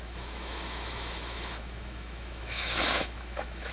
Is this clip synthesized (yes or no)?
yes